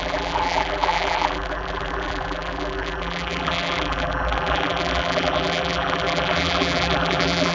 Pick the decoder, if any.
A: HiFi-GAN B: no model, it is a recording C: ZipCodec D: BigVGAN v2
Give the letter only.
D